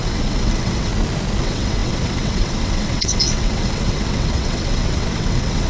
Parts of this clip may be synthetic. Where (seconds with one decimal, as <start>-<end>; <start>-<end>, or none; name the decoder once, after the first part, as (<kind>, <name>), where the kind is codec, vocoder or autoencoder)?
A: 0.0-0.9 (vocoder, WaveNeXt); 1.4-5.7